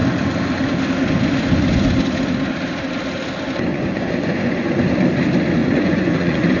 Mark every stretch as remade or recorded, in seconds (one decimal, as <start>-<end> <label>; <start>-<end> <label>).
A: 0.0-3.7 recorded; 3.7-4.8 remade; 4.8-5.6 recorded; 5.6-6.6 remade